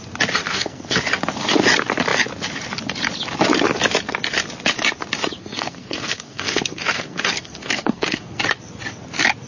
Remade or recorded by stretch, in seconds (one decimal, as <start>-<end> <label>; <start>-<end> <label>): 0.0-0.4 recorded; 0.4-1.0 remade; 1.0-5.4 recorded; 5.4-8.4 remade; 8.4-9.5 recorded